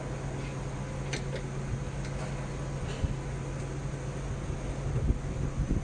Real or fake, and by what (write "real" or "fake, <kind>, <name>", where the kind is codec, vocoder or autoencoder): real